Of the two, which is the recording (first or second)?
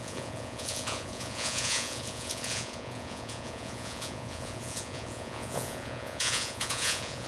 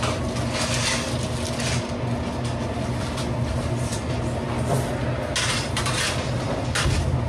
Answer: second